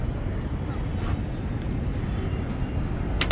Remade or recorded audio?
recorded